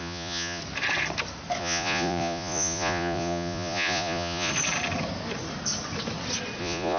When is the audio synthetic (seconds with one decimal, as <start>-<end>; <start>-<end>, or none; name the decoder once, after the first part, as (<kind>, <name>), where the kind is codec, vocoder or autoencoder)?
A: 0.0-0.6 (vocoder, Vocos); 1.6-4.5; 6.6-7.0